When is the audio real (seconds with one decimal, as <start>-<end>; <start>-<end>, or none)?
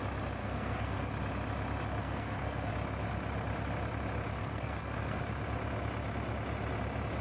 0.0-0.4; 1.1-2.0; 2.7-4.4; 5.2-7.2